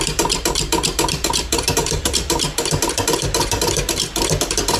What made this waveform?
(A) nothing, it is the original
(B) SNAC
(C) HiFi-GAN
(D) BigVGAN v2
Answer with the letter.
D